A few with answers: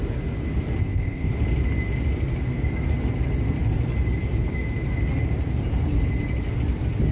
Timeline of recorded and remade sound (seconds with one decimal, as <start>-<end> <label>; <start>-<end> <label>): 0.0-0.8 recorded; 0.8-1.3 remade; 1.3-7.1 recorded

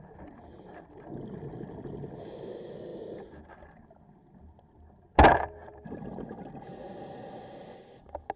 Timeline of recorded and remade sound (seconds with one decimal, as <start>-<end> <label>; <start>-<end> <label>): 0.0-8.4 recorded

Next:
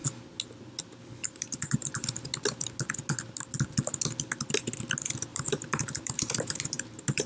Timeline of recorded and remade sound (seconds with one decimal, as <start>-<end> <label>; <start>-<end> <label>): 0.0-1.2 recorded; 1.2-2.3 remade; 2.3-5.3 recorded; 5.3-7.3 remade

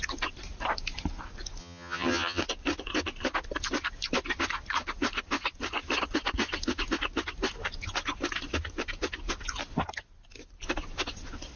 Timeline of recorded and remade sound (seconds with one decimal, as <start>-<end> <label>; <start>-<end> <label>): 0.0-1.6 recorded; 1.6-2.4 remade; 2.4-11.6 recorded